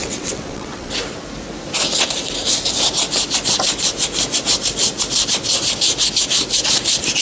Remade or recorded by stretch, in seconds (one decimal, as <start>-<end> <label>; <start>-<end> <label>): 0.0-0.9 remade; 0.9-7.2 recorded